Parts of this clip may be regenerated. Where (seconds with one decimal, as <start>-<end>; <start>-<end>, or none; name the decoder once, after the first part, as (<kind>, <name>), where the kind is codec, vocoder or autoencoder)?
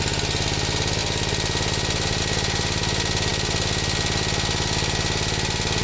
none